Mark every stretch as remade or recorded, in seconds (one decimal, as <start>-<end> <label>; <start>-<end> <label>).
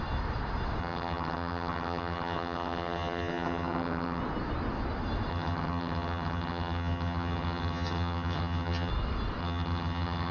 0.0-0.8 recorded; 0.8-4.2 remade; 4.2-5.3 recorded; 5.3-8.9 remade; 8.9-9.4 recorded; 9.4-10.3 remade